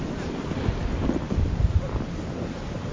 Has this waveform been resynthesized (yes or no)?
no